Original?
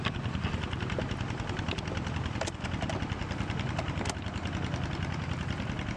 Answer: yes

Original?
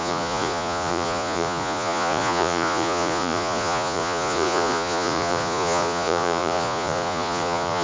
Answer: no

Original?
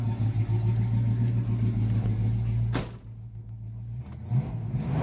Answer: yes